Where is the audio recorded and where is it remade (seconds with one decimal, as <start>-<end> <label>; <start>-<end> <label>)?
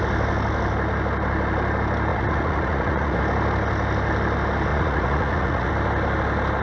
0.0-2.1 recorded; 2.1-3.2 remade; 3.2-4.7 recorded; 4.7-5.7 remade; 5.7-6.6 recorded